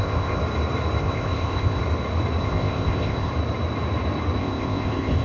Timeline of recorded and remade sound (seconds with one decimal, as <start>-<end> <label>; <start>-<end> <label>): 0.0-0.4 remade; 0.4-1.0 recorded; 1.0-1.8 remade; 1.8-2.4 recorded; 2.4-3.3 remade; 3.3-4.4 recorded; 4.4-5.2 remade